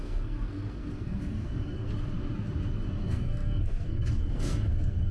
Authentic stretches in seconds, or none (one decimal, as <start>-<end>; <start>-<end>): 1.9-2.9